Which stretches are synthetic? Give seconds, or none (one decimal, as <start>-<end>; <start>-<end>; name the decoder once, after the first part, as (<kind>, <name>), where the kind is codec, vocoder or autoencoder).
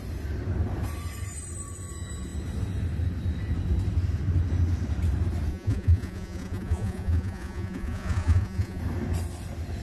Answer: 5.5-8.8 (vocoder, Vocos)